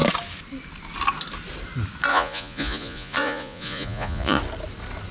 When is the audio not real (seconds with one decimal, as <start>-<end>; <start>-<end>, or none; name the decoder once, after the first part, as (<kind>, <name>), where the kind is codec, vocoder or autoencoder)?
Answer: 2.1-4.4 (vocoder, Vocos)